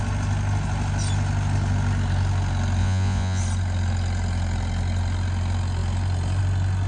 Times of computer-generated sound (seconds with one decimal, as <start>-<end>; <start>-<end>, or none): 2.8-3.4